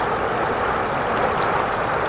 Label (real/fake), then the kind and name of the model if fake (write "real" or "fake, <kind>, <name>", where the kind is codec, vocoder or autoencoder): real